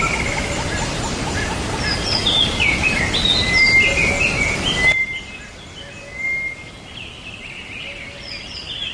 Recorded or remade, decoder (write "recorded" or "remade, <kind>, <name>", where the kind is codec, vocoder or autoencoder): recorded